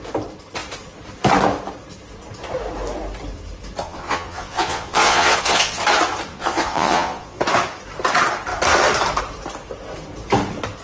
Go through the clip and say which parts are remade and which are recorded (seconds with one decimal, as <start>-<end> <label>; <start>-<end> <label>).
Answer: 0.0-3.8 recorded; 3.8-5.8 remade; 5.8-6.3 recorded; 6.3-7.4 remade; 7.4-10.8 recorded